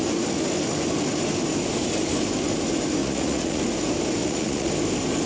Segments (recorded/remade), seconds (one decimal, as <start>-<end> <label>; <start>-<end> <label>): 0.0-3.0 recorded; 3.0-3.6 remade; 3.6-4.2 recorded; 4.2-4.7 remade; 4.7-5.3 recorded